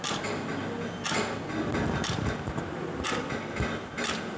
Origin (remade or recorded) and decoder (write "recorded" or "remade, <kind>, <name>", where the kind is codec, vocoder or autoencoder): recorded